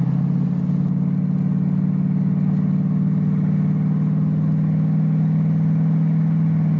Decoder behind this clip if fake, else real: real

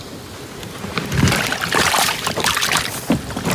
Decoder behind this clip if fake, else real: real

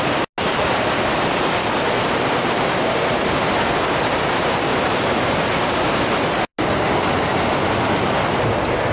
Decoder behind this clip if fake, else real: real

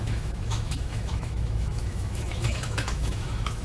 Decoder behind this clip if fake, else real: fake, autoencoder, DAC-VAE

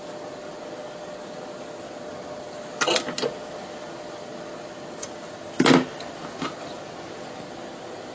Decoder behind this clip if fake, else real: real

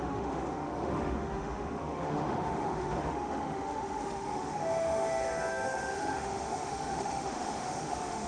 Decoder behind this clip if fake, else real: fake, autoencoder, DAC-VAE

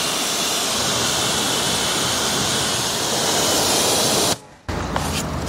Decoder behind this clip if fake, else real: real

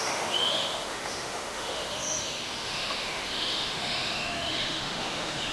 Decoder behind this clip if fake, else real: fake, autoencoder, DAC-VAE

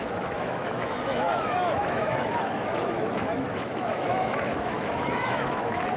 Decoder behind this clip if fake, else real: fake, autoencoder, DAC-VAE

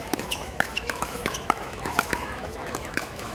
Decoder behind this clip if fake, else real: fake, autoencoder, DAC-VAE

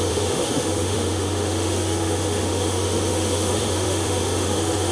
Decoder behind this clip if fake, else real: fake, autoencoder, DAC-VAE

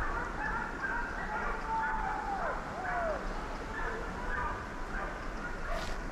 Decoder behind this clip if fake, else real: real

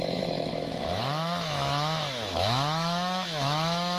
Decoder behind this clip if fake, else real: fake, autoencoder, DAC-VAE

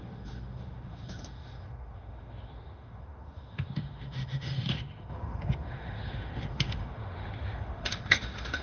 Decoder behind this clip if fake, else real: fake, autoencoder, DAC-VAE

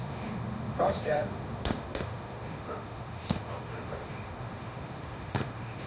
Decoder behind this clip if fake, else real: fake, autoencoder, DAC-VAE